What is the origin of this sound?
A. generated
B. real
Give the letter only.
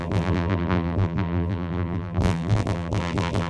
A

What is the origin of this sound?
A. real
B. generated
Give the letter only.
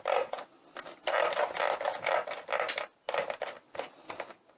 A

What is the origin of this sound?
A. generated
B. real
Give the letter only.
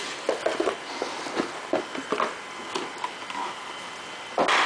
B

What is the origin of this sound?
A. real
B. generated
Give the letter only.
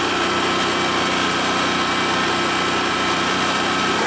A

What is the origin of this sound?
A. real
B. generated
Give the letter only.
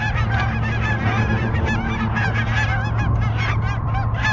A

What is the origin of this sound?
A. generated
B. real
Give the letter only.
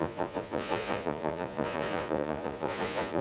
A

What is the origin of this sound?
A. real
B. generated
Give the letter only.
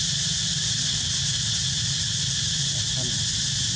A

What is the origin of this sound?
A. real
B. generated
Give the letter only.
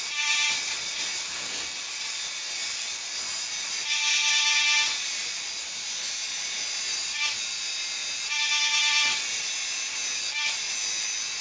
A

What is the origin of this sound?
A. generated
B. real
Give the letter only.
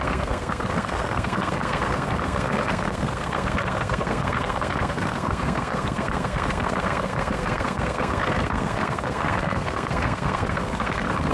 A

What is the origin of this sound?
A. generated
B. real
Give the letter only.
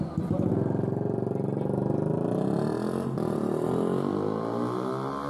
B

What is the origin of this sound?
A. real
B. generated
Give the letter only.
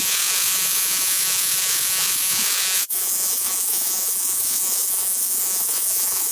B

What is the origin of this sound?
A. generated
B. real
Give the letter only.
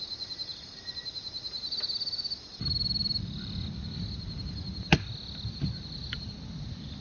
B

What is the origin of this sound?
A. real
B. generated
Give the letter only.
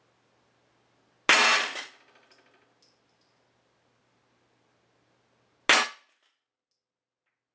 A